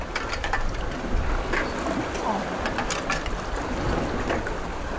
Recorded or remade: recorded